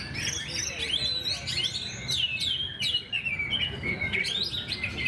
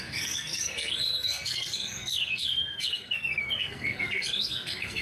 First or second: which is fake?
second